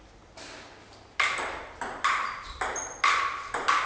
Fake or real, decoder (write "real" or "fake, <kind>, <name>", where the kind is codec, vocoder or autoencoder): real